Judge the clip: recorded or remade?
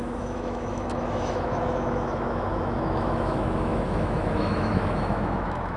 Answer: remade